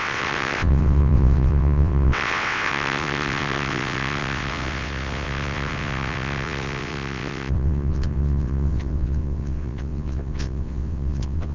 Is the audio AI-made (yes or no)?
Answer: yes